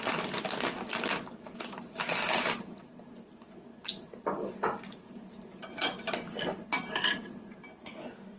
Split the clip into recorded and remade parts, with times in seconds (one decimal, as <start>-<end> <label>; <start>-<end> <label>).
0.0-7.8 recorded; 7.8-8.4 remade